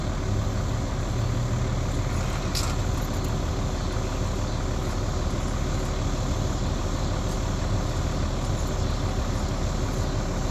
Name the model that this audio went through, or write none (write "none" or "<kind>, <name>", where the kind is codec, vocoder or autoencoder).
none